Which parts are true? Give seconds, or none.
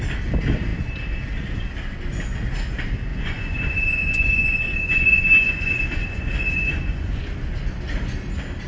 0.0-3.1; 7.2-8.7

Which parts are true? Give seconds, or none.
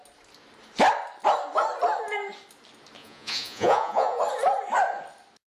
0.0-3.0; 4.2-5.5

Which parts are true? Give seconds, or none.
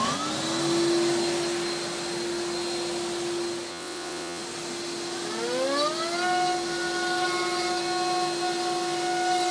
0.0-3.7; 4.4-9.5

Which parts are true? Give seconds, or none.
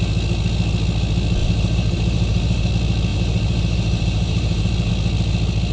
0.0-1.4; 2.7-3.1; 4.9-5.7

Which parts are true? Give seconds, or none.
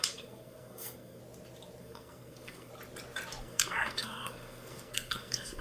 1.2-1.8; 2.7-3.4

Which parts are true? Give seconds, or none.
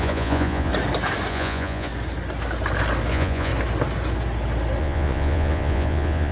0.7-1.3; 1.9-3.1; 3.5-4.8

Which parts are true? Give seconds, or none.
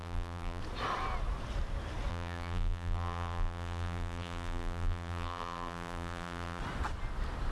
0.6-2.1; 6.6-7.5